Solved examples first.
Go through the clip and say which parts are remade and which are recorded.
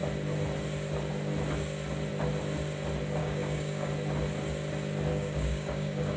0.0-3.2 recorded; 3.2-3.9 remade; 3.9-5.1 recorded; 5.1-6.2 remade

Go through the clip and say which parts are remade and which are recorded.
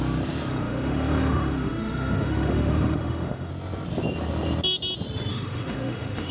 0.0-0.5 recorded; 0.5-3.5 remade; 3.5-5.3 recorded; 5.3-6.3 remade